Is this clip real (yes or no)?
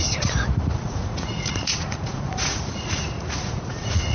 no